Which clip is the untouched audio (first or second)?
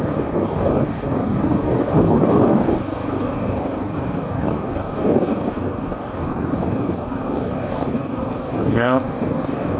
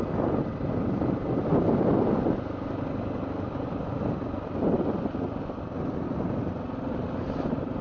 second